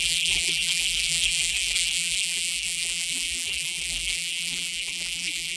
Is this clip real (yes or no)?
no